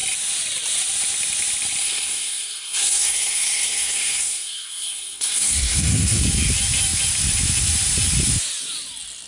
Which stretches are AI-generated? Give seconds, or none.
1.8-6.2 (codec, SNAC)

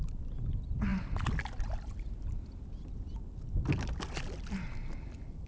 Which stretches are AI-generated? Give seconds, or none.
none